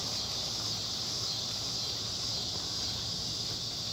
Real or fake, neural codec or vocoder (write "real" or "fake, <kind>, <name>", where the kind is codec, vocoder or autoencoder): real